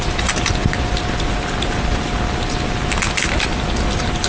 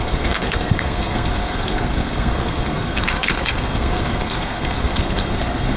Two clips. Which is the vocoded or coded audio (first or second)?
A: second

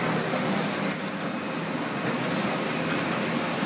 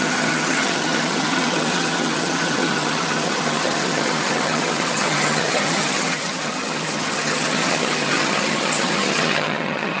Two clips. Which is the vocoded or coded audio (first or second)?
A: second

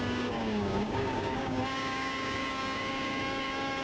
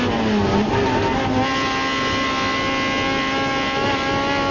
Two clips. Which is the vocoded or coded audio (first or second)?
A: first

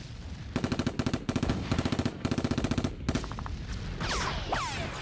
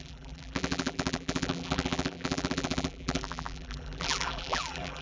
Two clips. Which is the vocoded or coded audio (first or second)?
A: second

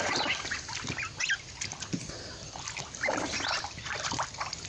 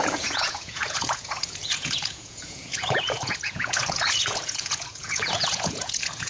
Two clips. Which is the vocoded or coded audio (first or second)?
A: second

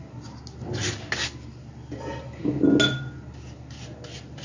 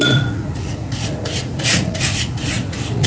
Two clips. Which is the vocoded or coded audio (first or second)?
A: second